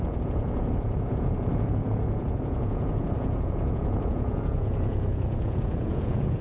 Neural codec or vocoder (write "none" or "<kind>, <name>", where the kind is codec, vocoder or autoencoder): vocoder, Vocos